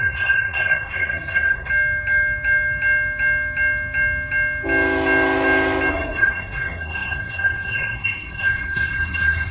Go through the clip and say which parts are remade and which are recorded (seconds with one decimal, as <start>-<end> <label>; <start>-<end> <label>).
0.0-1.7 remade; 1.7-5.9 recorded; 5.9-9.5 remade